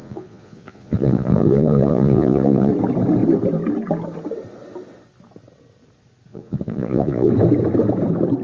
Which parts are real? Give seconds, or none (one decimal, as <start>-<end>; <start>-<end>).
2.7-6.3; 7.3-8.4